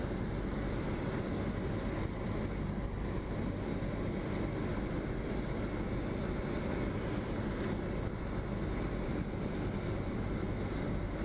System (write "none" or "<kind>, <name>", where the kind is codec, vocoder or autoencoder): none